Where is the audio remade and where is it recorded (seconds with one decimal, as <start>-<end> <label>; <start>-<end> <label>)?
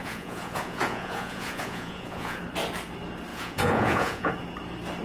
0.0-2.4 remade; 2.4-3.3 recorded; 3.3-4.3 remade; 4.3-5.0 recorded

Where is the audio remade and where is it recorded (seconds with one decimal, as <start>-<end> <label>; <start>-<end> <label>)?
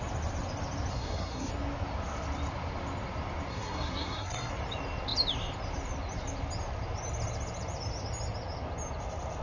0.0-0.9 recorded; 0.9-1.5 remade; 1.5-3.5 recorded; 3.5-4.5 remade; 4.5-9.4 recorded